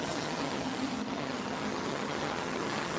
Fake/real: fake